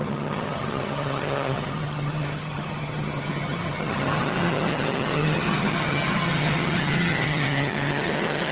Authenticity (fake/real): fake